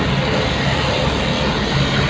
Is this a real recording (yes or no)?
yes